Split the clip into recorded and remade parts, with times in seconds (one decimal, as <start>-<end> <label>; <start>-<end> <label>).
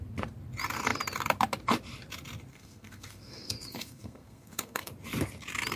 0.0-2.5 recorded; 2.5-4.9 remade; 4.9-5.8 recorded